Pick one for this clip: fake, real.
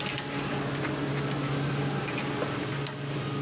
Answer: real